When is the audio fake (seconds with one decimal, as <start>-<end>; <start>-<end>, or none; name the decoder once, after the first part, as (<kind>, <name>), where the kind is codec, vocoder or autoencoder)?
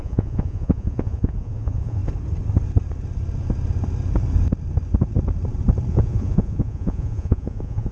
0.0-2.0 (vocoder, Vocos); 5.9-7.9